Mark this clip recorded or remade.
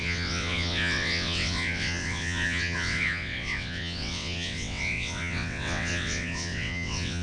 remade